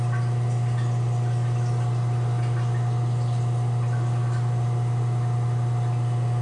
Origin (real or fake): real